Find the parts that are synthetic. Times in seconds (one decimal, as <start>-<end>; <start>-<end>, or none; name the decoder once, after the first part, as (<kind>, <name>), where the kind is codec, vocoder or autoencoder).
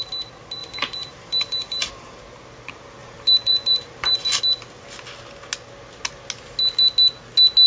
0.6-2.2 (vocoder, BigVGAN v2); 3.0-4.4